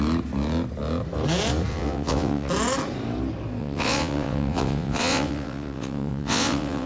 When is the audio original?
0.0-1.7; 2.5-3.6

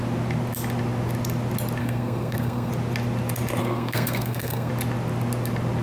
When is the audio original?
0.0-1.8; 2.7-3.6; 4.7-5.8

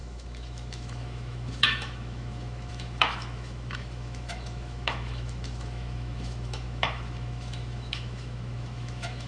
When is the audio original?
none

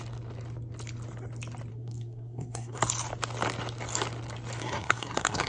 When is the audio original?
0.0-1.7; 2.8-4.6

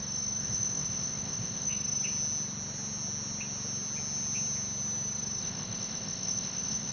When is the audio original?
0.0-0.4; 1.7-5.4

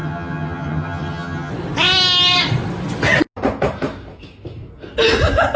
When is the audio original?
1.5-5.6